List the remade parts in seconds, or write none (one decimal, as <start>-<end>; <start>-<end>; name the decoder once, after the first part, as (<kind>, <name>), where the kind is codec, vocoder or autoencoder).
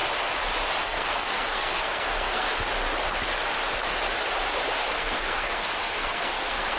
0.8-2.5 (codec, SNAC); 4.9-6.8